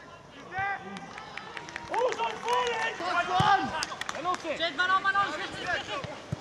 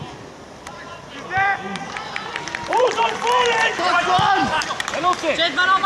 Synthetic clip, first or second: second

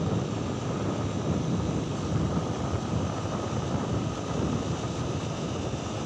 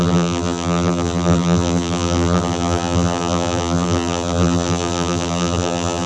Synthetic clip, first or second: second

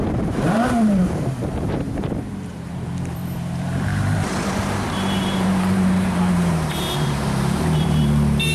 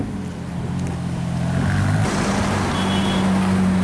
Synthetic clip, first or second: first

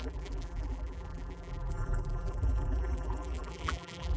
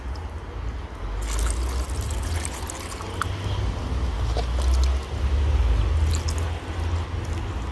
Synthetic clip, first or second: first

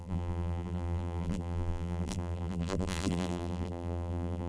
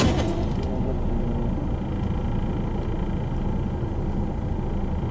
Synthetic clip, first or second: first